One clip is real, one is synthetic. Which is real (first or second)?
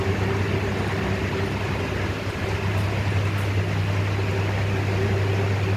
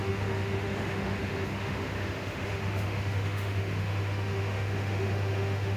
first